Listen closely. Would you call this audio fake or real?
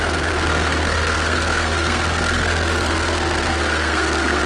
fake